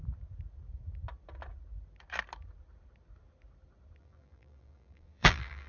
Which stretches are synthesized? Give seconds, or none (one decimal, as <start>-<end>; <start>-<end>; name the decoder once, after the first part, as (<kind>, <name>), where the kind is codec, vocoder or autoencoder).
4.0-5.7 (vocoder, BigVGAN v2)